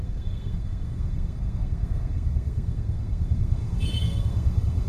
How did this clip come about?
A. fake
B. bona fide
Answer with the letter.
A